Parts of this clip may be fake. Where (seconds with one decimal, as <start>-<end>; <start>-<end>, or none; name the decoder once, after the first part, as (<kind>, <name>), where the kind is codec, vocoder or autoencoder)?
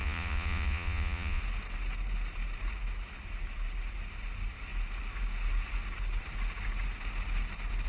0.0-1.4 (vocoder, Vocos)